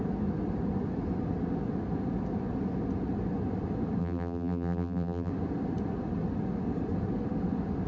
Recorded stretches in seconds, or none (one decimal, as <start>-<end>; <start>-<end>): 0.0-4.0; 5.3-7.9